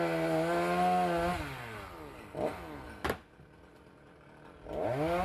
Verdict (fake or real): real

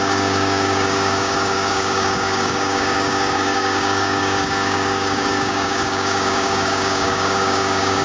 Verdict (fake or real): fake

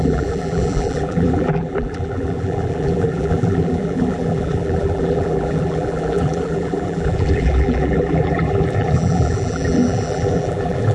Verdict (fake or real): fake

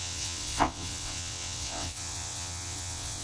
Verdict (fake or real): fake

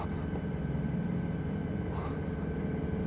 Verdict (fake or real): real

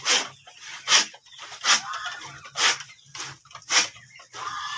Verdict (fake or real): real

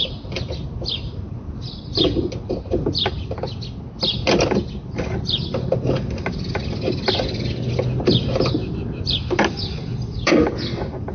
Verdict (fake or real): real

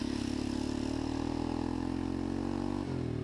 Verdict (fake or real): real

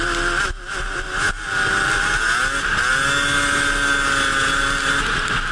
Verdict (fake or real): real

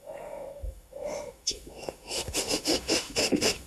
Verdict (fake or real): fake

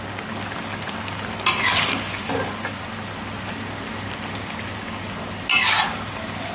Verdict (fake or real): real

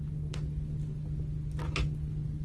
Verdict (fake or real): real